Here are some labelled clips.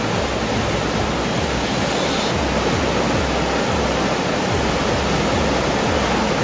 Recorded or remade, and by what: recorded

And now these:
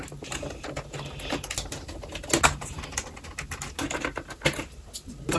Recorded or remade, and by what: recorded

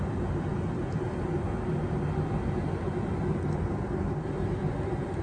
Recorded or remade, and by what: recorded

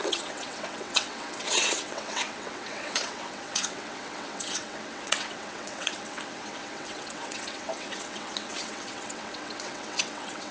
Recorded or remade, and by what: remade, vocoder, WaveNeXt